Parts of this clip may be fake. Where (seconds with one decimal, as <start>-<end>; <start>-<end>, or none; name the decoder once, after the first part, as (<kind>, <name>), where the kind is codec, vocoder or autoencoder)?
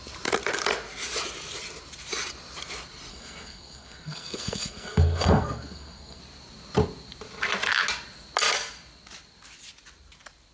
3.1-6.2 (codec, SNAC)